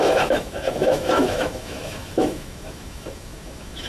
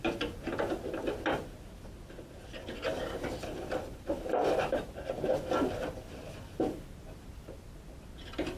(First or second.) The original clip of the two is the second